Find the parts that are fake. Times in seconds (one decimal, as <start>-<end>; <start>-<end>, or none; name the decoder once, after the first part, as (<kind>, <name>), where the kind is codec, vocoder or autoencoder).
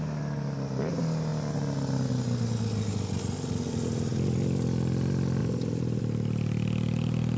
5.4-6.0 (vocoder, BigVGAN v2)